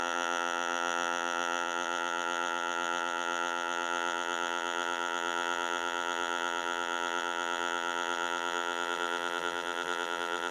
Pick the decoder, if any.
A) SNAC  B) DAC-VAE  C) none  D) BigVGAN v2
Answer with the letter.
D